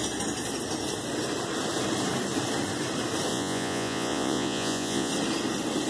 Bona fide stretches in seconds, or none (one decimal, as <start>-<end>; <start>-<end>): 0.0-3.3; 5.1-5.9